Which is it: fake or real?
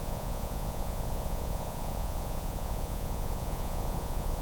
fake